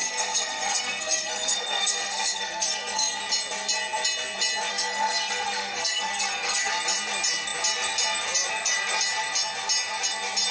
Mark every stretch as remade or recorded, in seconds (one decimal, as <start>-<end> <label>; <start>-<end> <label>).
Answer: 0.0-3.2 remade; 3.2-4.7 recorded; 4.7-6.7 remade; 6.7-10.5 recorded